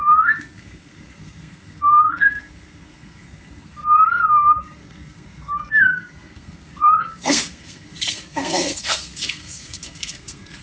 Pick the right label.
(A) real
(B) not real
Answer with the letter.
B